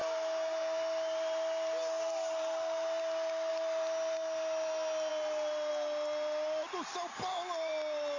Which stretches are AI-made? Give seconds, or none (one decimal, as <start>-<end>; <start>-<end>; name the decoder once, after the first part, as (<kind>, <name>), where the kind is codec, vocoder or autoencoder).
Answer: none